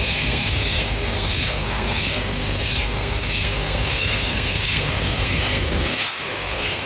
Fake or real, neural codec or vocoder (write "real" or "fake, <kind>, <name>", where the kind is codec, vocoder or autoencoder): fake, codec, SNAC